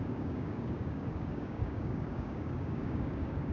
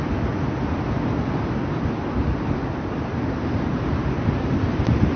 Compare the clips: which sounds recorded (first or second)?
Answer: second